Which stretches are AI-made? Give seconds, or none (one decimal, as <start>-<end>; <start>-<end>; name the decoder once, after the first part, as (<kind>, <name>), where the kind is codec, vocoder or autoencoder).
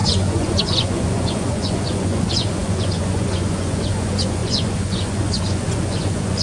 0.0-6.4 (vocoder, Vocos)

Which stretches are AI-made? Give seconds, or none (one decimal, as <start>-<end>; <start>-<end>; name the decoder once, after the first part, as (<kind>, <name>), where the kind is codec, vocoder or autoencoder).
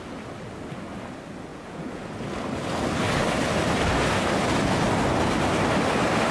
1.5-2.0 (vocoder, Vocos)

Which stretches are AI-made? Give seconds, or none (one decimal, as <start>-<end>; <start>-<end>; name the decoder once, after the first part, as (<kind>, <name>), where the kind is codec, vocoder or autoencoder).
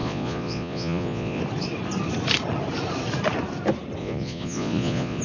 0.0-1.4 (vocoder, Vocos); 4.0-5.2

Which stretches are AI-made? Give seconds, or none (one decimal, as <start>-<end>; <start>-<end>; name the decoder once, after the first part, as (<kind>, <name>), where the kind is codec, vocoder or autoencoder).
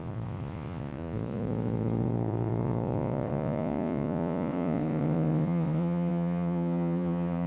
0.0-7.5 (vocoder, Vocos)